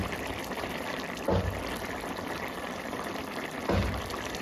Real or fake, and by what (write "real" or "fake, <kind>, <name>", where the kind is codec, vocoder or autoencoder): fake, vocoder, BigVGAN v2